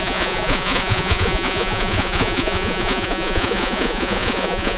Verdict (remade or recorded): remade